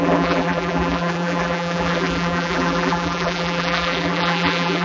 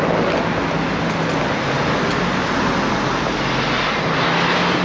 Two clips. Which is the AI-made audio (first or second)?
first